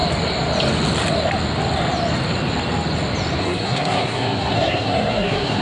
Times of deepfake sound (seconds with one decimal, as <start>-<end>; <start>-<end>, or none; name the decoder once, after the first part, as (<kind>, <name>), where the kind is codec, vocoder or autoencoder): 3.4-5.6 (codec, SNAC)